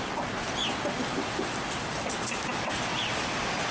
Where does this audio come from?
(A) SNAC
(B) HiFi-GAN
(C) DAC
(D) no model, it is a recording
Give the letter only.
D